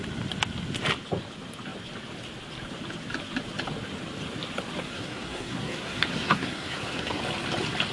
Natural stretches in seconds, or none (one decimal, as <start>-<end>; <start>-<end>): 0.0-4.8; 7.2-7.9